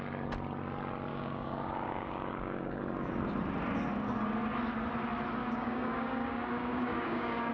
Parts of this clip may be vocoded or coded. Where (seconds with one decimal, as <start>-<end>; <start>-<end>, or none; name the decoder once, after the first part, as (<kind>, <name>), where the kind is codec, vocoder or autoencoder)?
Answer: 1.1-2.8 (codec, DAC); 5.4-7.5